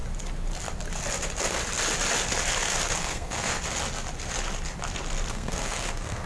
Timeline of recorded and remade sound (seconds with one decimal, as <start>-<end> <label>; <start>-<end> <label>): 0.0-3.0 recorded; 3.0-3.6 remade; 3.6-5.3 recorded; 5.3-6.3 remade